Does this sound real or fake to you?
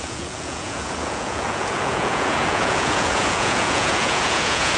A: fake